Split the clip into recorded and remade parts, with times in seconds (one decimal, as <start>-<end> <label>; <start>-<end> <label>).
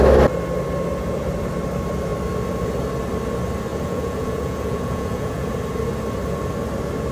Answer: 0.0-3.7 recorded; 3.7-5.5 remade; 5.5-7.1 recorded